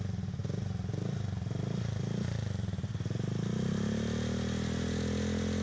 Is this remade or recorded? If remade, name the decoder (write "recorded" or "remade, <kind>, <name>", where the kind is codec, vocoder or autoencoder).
recorded